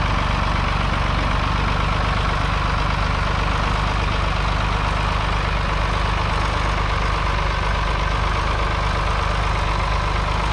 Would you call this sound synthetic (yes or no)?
no